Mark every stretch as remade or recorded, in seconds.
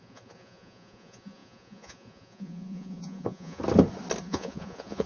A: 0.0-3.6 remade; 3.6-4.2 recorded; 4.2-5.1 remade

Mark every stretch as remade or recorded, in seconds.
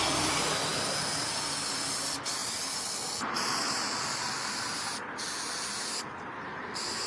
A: 0.0-7.1 recorded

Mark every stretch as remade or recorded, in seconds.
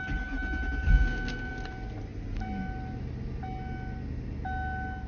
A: 0.0-0.9 recorded; 0.9-1.5 remade; 1.5-5.1 recorded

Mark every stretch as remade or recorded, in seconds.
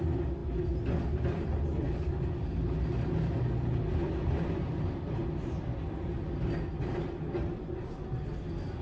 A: 0.0-8.8 recorded